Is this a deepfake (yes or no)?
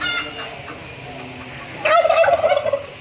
no